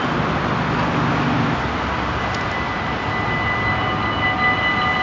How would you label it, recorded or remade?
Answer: recorded